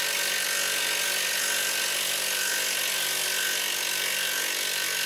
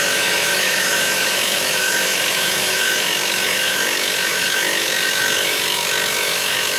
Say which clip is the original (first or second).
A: first